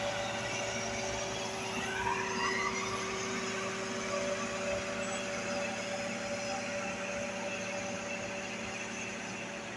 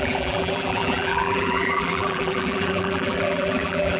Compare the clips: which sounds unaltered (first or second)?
first